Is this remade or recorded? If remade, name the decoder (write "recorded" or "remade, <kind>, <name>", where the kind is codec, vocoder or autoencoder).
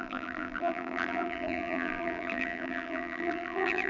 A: remade, vocoder, BigVGAN v2